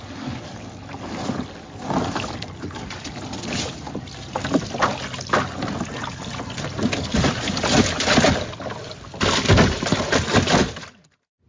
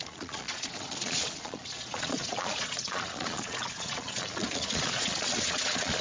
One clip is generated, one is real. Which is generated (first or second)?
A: second